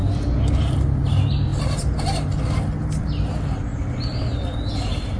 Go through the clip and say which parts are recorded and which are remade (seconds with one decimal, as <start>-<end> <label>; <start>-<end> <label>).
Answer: 0.0-5.2 recorded